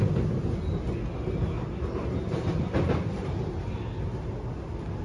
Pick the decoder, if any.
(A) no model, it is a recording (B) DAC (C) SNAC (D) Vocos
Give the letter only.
A